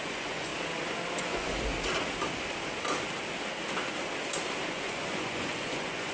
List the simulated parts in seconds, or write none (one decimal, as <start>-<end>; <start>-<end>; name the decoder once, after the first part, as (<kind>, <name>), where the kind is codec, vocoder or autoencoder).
0.0-0.5 (vocoder, Vocos); 1.2-1.7; 4.7-6.1